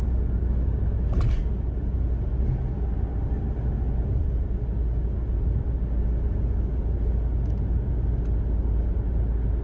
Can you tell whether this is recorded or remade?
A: recorded